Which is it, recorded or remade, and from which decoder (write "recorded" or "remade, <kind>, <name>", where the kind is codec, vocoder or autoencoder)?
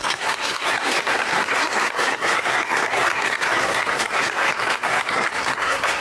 remade, codec, SNAC